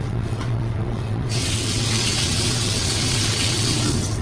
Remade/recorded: remade